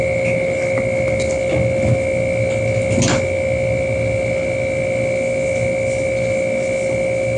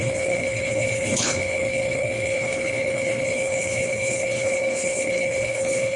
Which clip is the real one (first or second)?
first